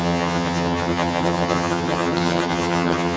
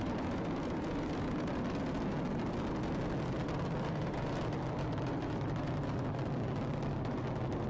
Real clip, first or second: second